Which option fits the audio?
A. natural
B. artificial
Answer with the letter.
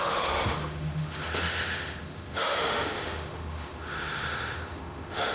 B